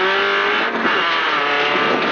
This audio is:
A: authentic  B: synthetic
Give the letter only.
A